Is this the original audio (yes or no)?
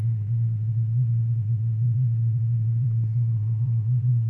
no